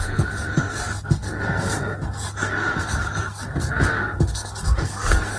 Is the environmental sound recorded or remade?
remade